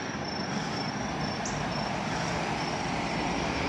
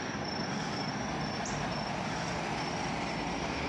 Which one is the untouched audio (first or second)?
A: second